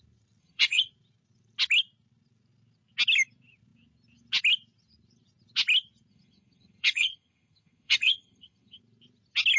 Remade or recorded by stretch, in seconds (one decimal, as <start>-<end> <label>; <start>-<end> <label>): 0.0-0.4 recorded; 0.4-0.9 remade; 0.9-6.1 recorded; 6.1-8.8 remade; 8.8-9.6 recorded